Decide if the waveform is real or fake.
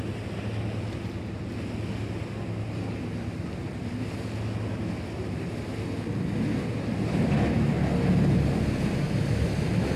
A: real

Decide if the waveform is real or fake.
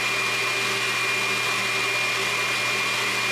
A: real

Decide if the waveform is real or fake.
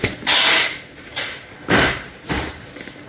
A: fake